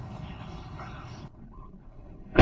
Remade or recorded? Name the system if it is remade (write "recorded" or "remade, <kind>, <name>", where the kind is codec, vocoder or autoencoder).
remade, codec, HILCodec